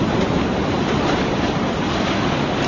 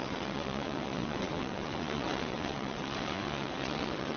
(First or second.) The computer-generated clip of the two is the second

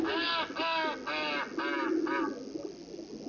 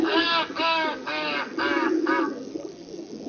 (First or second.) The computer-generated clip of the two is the second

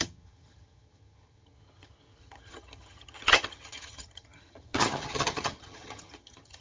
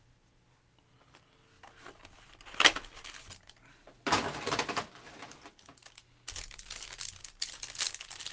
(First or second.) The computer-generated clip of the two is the first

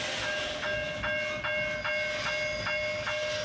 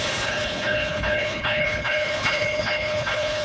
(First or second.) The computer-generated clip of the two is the second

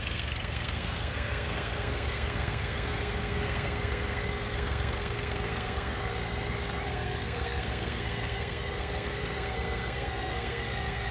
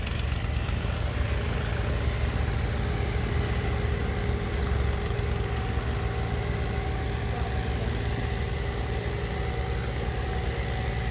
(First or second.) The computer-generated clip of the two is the first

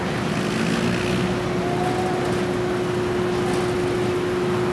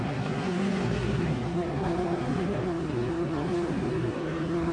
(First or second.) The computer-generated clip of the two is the second